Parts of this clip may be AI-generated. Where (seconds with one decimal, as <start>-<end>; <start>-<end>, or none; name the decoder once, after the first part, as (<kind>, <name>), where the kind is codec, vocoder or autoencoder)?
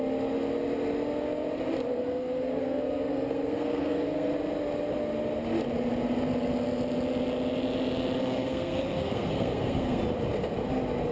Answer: 1.9-4.3 (codec, SNAC); 8.2-10.0